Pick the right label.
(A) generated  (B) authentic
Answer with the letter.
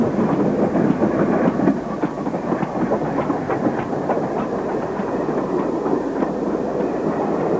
B